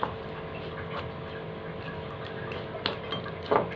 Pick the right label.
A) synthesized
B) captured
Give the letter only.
B